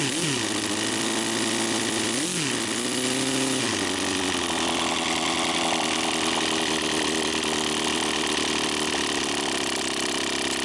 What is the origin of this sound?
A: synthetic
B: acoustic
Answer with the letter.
B